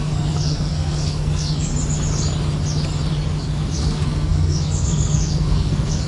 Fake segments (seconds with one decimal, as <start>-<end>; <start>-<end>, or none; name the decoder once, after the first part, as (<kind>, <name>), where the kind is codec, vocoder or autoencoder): 0.0-1.7 (codec, SNAC); 3.4-6.1